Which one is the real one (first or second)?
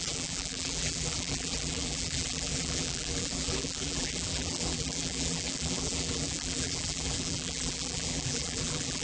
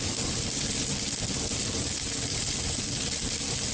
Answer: second